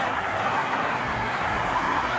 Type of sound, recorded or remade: remade